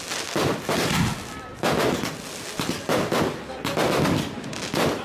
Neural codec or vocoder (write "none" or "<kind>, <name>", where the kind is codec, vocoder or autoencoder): none